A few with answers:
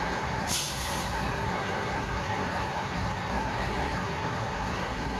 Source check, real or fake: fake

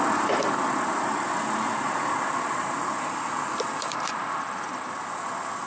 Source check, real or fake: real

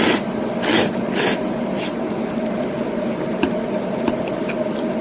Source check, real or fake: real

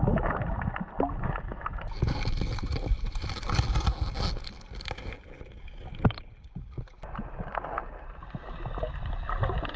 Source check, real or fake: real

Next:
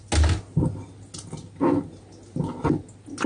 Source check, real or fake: real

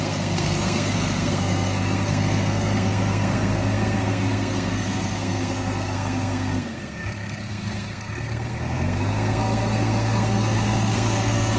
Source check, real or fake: fake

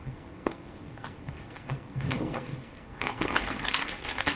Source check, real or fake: fake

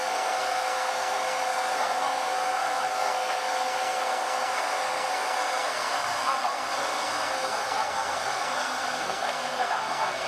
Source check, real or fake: fake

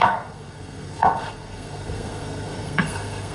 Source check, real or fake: fake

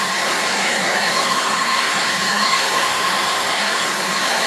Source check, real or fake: fake